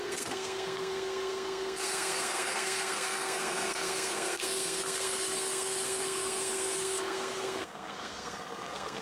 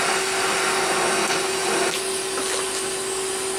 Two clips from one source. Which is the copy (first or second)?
first